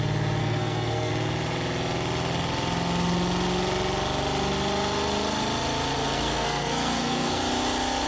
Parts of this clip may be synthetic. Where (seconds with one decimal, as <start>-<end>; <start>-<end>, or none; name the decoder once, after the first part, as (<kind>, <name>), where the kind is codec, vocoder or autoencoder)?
0.4-1.1 (codec, SNAC); 5.9-7.4